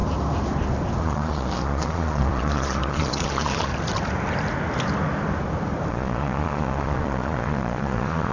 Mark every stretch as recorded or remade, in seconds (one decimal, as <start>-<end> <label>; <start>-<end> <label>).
0.0-1.0 recorded; 1.0-3.7 remade; 3.7-5.9 recorded; 5.9-8.3 remade